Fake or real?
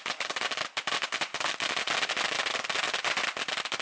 real